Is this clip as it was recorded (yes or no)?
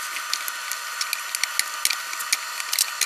yes